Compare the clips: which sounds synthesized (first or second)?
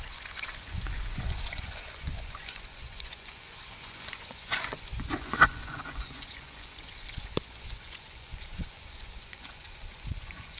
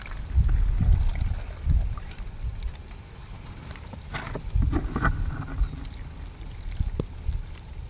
first